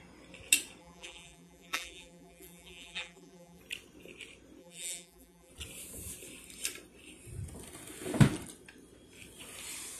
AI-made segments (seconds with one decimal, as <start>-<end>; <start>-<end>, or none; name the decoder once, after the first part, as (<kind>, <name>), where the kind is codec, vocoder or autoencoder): 0.8-3.6 (vocoder, BigVGAN v2); 4.6-5.5